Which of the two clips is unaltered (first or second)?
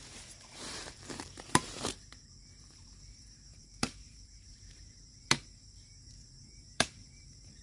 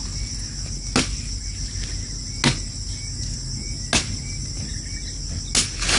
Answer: second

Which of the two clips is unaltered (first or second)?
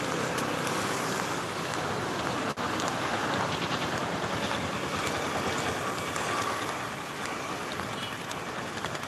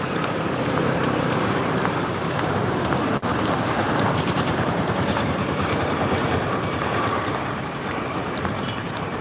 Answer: first